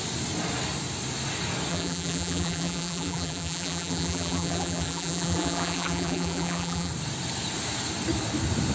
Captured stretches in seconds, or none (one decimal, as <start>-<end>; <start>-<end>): 0.0-1.7; 6.9-8.7